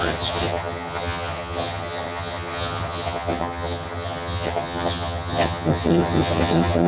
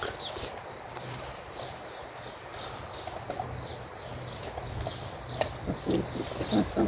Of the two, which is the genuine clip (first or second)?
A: second